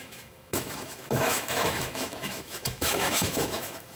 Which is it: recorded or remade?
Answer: remade